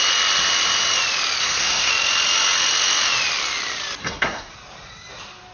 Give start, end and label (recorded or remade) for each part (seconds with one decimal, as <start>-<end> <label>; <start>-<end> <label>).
0.0-1.4 recorded; 1.4-1.9 remade; 1.9-4.0 recorded; 4.0-4.5 remade; 4.5-5.5 recorded